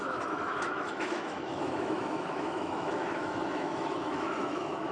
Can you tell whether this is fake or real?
fake